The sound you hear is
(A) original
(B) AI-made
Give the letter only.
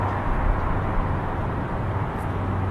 A